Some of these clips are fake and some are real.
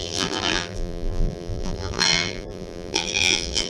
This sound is fake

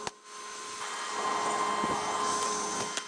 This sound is real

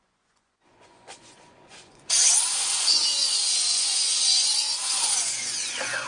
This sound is fake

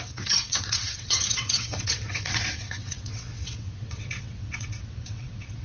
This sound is fake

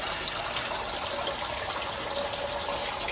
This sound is real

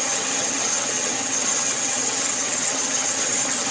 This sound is fake